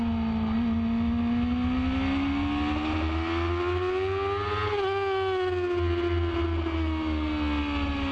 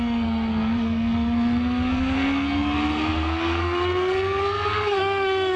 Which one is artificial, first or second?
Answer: second